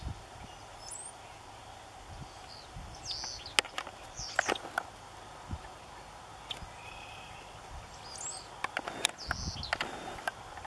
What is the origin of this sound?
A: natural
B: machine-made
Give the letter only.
A